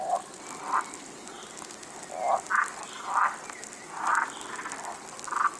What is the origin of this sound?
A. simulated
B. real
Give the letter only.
B